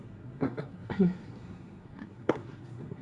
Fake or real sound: fake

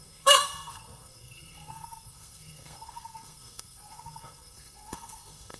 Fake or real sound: fake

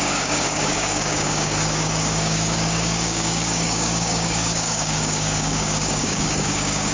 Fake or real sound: fake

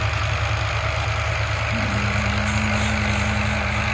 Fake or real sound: real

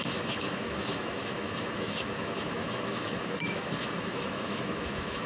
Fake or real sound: fake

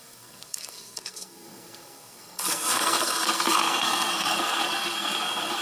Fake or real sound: fake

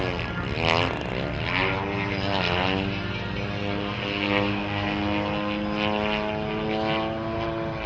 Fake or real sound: real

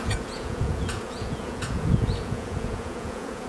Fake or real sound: fake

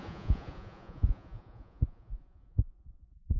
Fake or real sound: fake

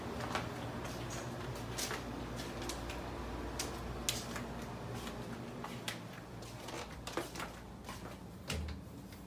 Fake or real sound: real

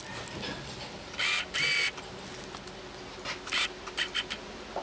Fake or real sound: real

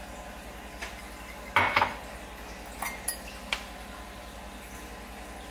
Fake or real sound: real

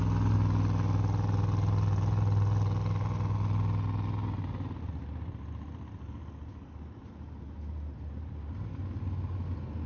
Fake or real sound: real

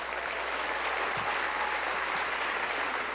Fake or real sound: fake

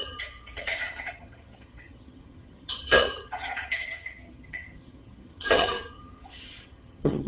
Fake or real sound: fake